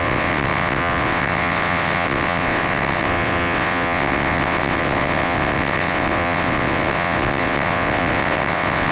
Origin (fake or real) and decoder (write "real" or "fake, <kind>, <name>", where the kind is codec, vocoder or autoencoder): fake, vocoder, WaveNeXt